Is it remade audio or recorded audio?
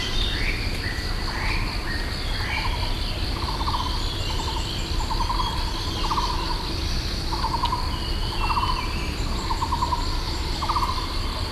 recorded